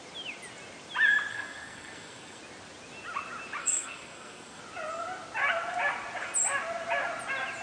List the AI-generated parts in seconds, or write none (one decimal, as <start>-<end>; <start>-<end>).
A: 1.3-2.4; 3.6-4.6